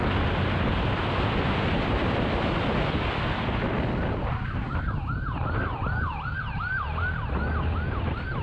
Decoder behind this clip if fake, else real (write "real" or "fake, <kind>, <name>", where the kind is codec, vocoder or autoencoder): real